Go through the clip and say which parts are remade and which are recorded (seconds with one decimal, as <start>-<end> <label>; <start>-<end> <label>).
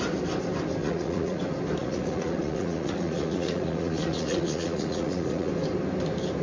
0.0-0.8 recorded; 0.8-1.4 remade; 1.4-1.8 recorded; 1.8-5.5 remade; 5.5-6.4 recorded